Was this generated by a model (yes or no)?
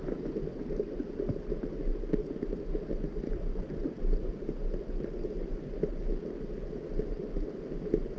no